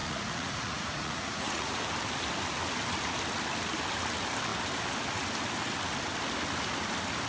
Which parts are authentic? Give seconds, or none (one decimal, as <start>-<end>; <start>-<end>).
1.8-7.3